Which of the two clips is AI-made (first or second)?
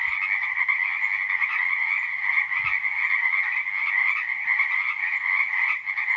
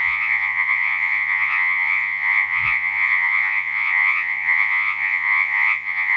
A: second